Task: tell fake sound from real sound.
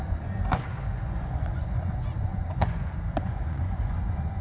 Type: fake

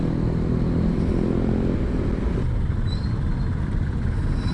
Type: real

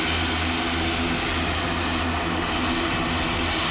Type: real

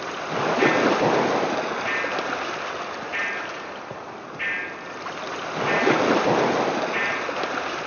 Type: real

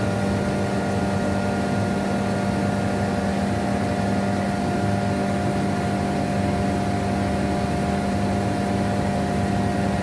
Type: real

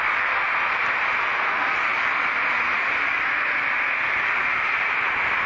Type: real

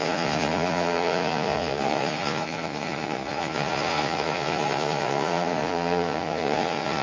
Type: fake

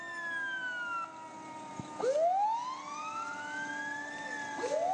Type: real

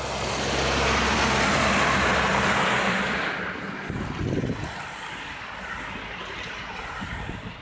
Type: real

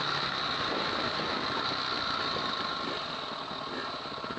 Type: real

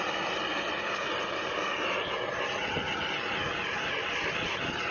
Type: real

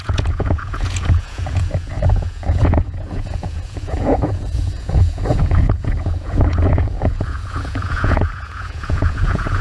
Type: fake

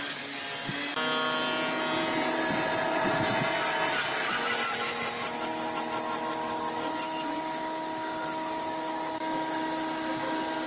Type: real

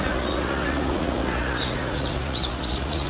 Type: fake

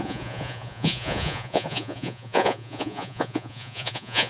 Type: fake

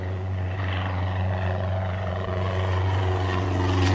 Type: fake